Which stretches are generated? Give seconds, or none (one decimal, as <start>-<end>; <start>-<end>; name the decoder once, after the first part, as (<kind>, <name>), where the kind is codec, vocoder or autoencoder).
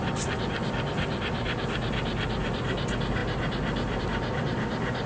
none